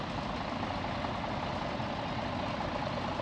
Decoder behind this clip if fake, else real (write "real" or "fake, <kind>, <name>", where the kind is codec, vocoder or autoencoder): fake, vocoder, BigVGAN v2